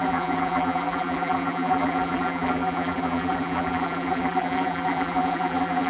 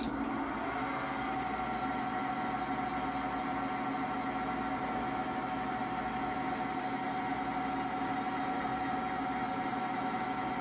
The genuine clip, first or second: second